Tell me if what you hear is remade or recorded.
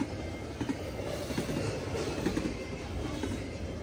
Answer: recorded